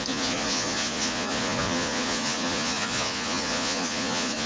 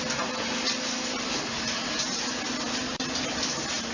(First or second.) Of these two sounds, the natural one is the second